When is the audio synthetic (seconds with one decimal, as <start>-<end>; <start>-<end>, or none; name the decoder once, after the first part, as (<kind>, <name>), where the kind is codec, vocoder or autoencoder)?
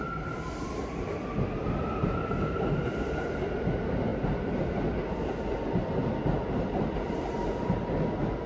none